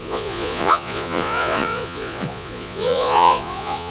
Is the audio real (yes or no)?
no